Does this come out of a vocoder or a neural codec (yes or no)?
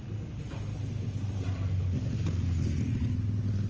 no